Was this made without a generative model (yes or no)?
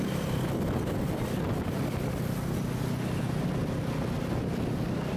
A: yes